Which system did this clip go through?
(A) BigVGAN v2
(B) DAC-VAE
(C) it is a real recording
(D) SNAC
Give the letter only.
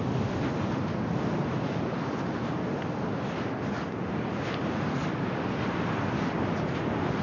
C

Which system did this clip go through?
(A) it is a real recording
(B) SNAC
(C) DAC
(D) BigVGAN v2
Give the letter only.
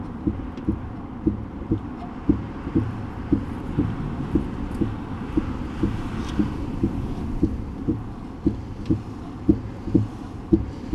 D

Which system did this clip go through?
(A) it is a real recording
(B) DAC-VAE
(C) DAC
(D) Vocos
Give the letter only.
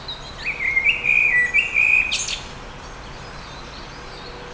A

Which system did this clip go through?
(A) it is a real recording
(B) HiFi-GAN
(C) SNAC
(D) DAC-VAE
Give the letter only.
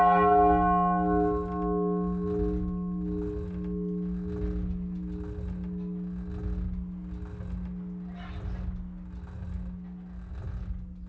A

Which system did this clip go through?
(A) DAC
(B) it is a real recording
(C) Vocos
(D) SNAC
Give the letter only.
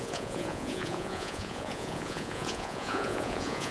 C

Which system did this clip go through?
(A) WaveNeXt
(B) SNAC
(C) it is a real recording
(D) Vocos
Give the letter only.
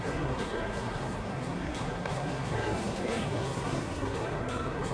B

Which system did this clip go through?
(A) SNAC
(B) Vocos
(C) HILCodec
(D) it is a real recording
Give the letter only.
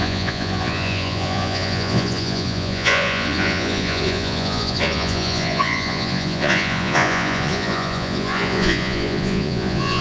B